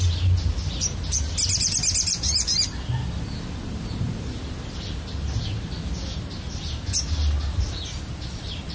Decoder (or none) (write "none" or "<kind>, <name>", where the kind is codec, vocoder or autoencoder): none